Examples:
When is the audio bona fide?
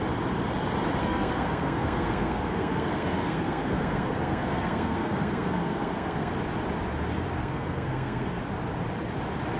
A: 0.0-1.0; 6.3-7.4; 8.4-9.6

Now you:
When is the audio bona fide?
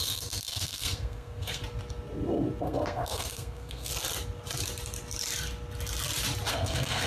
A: 1.6-2.6; 3.9-6.5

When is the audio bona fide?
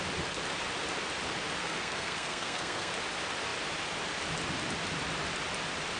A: 0.0-1.6; 2.9-6.0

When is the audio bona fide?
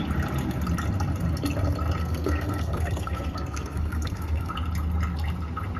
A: 0.0-2.0; 4.5-5.8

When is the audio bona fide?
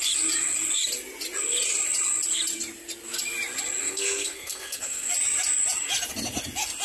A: 0.0-3.8; 5.1-6.8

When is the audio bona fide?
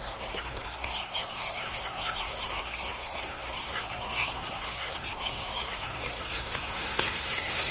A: none